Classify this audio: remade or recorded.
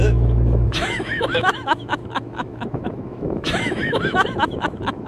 remade